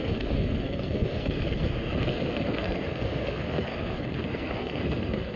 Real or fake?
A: fake